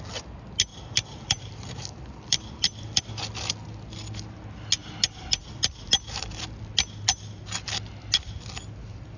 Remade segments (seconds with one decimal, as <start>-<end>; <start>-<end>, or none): 0.7-3.0